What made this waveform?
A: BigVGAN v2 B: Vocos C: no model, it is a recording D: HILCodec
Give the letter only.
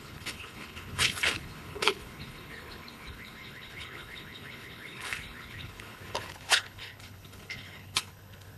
D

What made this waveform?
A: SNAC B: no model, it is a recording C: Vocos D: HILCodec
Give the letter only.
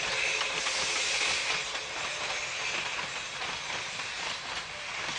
B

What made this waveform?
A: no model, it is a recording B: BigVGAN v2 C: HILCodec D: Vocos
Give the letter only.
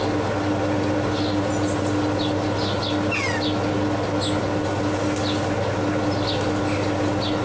A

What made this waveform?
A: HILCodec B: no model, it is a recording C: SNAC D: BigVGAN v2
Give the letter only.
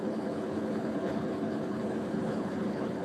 A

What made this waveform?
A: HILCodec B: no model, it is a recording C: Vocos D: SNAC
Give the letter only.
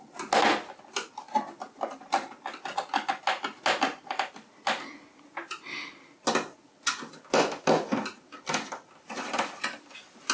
B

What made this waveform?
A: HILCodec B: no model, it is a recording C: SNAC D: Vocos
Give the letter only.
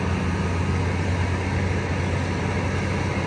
B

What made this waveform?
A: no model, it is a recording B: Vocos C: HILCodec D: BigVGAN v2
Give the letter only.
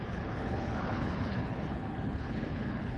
C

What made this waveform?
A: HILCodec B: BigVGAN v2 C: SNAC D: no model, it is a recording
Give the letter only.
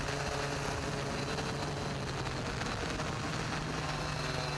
D